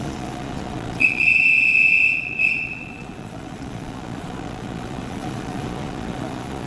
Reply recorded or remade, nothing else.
remade